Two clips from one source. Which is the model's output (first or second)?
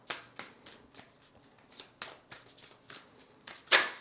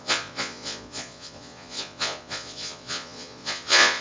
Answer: second